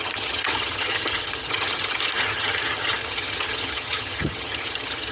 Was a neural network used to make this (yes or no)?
yes